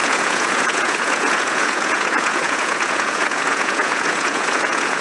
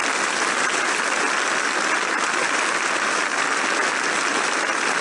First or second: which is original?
second